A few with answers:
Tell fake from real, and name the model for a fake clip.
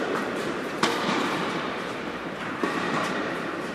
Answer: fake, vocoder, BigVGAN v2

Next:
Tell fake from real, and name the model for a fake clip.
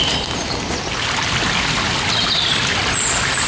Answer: real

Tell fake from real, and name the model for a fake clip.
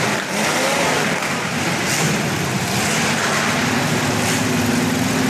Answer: real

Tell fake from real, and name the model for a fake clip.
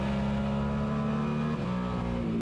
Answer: real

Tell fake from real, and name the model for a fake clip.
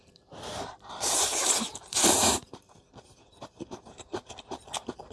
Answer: fake, vocoder, BigVGAN v2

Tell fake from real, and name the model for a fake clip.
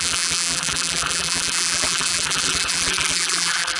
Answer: fake, vocoder, BigVGAN v2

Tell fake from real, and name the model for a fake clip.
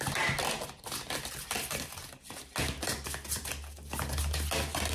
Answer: real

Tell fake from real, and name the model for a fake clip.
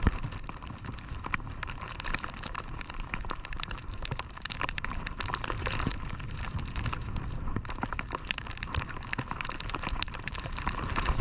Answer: fake, vocoder, BigVGAN v2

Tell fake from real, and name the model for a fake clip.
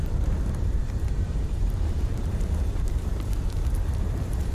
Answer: fake, vocoder, BigVGAN v2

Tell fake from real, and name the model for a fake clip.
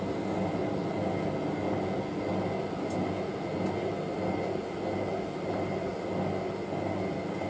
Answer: real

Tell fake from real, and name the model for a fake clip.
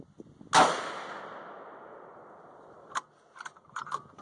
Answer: real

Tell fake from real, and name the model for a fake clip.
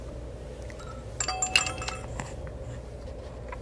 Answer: real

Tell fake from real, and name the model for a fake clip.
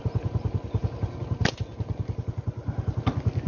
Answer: real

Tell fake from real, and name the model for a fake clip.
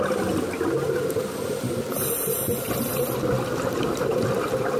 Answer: real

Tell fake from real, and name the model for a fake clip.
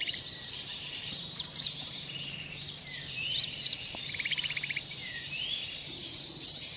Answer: fake, vocoder, BigVGAN v2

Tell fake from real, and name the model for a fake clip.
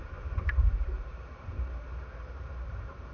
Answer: fake, vocoder, BigVGAN v2